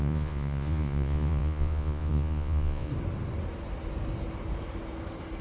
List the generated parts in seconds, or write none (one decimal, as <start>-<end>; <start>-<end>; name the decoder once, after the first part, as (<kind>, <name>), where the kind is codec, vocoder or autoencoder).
0.0-2.9 (vocoder, Vocos)